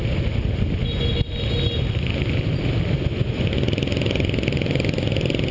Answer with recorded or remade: recorded